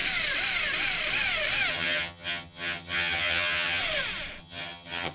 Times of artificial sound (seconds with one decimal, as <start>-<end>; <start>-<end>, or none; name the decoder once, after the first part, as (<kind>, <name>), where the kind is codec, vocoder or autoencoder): 1.7-3.8 (vocoder, HiFi-GAN); 4.4-5.1

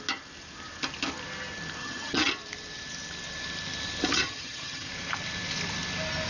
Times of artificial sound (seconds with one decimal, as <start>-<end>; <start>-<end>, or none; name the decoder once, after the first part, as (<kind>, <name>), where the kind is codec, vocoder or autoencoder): 1.8-2.3 (vocoder, HiFi-GAN); 4.1-4.9